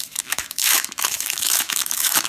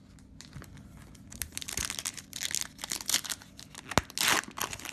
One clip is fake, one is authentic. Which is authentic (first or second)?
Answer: second